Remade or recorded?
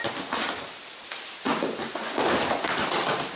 recorded